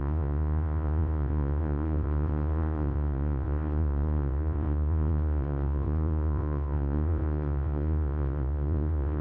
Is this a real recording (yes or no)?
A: no